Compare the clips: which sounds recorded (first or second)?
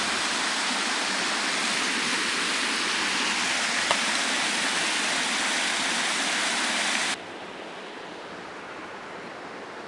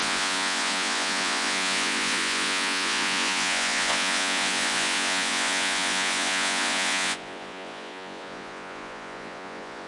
first